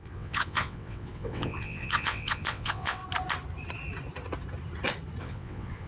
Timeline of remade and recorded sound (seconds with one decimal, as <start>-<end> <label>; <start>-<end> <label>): 0.0-3.0 remade; 3.0-5.2 recorded; 5.2-5.9 remade